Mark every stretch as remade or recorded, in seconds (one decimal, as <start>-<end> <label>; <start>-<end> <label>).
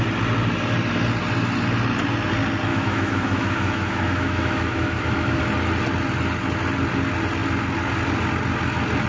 0.0-2.7 recorded; 2.7-5.4 remade; 5.4-9.1 recorded